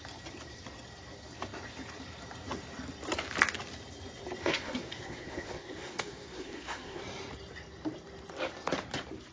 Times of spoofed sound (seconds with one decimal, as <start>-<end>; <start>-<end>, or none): 4.4-7.0